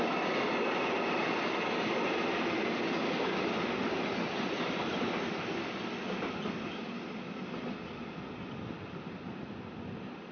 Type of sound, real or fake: real